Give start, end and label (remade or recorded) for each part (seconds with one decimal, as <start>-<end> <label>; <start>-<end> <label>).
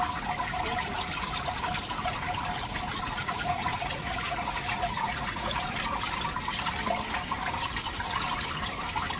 0.0-3.2 recorded; 3.2-5.6 remade; 5.6-9.2 recorded